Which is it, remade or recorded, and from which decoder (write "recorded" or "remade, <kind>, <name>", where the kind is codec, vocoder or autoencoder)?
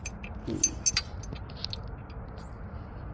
recorded